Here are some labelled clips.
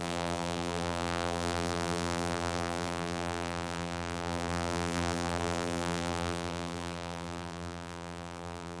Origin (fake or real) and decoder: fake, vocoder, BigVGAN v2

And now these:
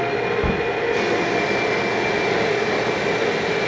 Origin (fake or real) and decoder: real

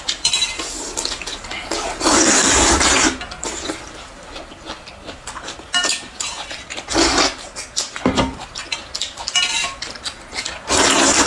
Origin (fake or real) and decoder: real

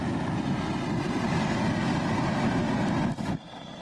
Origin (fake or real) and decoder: real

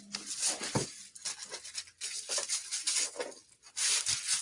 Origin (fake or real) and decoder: real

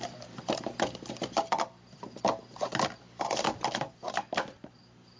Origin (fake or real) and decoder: real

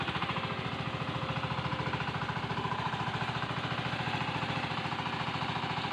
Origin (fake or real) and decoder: fake, vocoder, BigVGAN v2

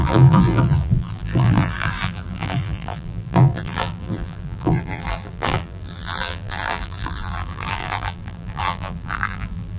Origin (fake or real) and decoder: fake, vocoder, BigVGAN v2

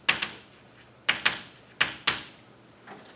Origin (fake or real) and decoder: real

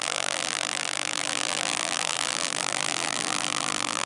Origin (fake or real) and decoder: fake, vocoder, BigVGAN v2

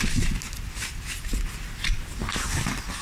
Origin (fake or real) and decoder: real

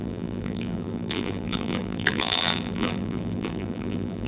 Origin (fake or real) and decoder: fake, vocoder, BigVGAN v2